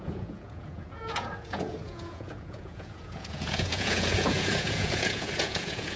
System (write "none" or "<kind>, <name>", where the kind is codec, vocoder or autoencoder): vocoder, Vocos